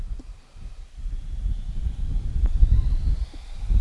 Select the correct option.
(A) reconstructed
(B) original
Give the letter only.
A